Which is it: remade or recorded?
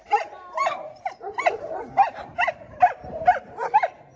remade